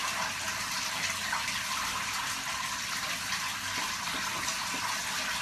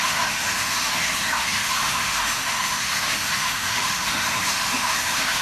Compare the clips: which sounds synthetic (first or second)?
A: second